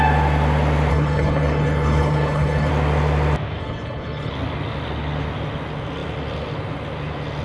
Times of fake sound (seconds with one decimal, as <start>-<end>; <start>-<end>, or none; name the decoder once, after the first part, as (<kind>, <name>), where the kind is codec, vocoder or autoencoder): 0.9-2.7 (codec, HILCodec); 3.6-4.3